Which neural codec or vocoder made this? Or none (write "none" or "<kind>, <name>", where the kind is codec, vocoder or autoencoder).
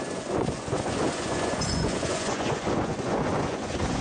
vocoder, Vocos